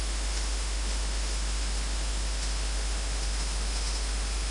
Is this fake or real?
fake